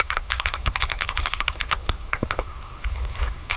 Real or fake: fake